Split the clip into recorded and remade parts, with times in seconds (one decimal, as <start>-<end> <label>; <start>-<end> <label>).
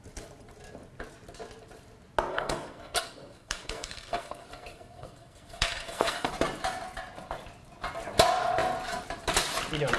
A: 0.0-2.3 recorded; 2.3-6.3 remade; 6.3-10.0 recorded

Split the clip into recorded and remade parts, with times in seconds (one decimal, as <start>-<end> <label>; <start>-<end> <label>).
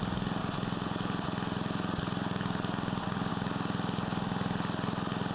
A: 0.0-5.3 recorded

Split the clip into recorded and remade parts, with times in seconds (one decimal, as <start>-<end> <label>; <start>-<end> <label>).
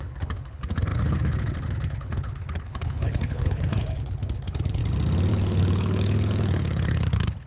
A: 0.0-4.8 remade; 4.8-5.3 recorded; 5.3-7.5 remade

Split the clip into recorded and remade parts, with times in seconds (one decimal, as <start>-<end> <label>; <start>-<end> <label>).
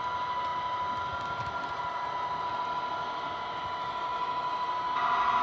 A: 0.0-5.4 recorded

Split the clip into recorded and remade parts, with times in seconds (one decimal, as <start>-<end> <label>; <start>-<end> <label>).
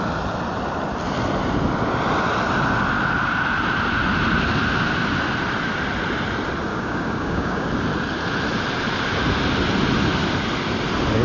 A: 0.0-6.7 recorded; 6.7-7.7 remade; 7.7-11.2 recorded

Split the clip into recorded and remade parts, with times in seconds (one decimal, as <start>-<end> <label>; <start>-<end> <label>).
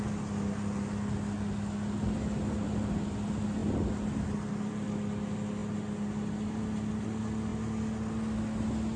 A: 0.0-9.0 recorded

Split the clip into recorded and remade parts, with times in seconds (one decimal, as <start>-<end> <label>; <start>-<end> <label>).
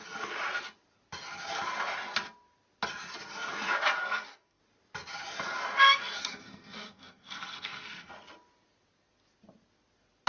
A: 0.0-4.0 recorded; 4.0-4.6 remade; 4.6-6.0 recorded; 6.0-8.1 remade; 8.1-10.3 recorded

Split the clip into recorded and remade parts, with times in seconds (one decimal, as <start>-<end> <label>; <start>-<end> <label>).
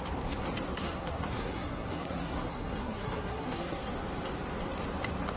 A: 0.0-0.7 recorded; 0.7-3.9 remade; 3.9-5.4 recorded